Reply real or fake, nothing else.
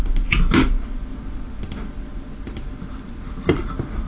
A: real